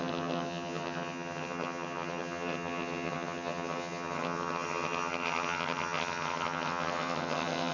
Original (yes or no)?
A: no